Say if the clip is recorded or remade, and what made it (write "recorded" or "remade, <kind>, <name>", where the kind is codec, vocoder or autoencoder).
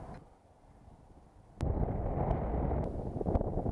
recorded